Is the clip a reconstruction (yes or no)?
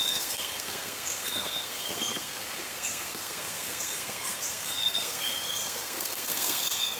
yes